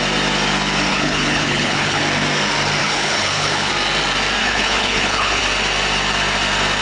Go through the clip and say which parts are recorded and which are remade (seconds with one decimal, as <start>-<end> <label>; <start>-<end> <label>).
0.0-0.9 recorded; 0.9-2.0 remade; 2.0-2.8 recorded; 2.8-3.7 remade; 3.7-4.4 recorded; 4.4-5.4 remade; 5.4-6.8 recorded